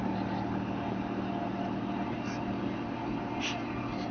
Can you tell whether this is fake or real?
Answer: real